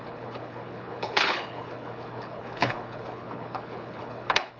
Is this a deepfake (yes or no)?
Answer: yes